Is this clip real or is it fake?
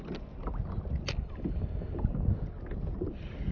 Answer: real